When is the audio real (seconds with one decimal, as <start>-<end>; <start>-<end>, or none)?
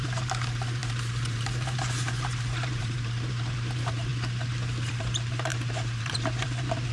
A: 4.1-4.9